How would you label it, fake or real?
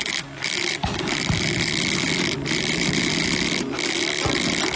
real